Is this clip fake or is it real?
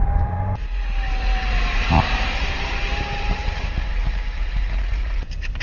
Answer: fake